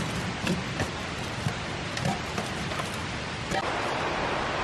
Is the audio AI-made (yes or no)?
no